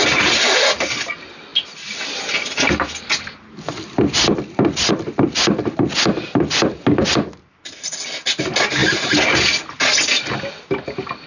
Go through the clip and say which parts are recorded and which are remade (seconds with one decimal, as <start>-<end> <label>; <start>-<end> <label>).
0.0-11.3 recorded